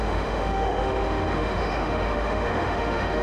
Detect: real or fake fake